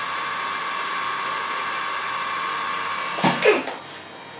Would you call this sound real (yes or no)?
yes